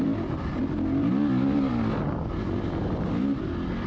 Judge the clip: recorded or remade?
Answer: recorded